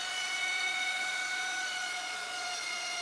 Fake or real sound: fake